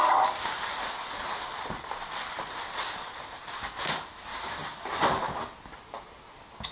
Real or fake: real